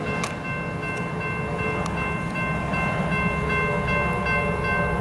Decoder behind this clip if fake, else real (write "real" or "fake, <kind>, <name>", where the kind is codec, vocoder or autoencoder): real